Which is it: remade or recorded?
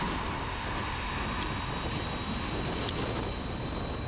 recorded